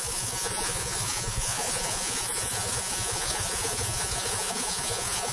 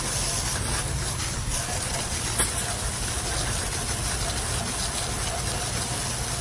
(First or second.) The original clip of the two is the second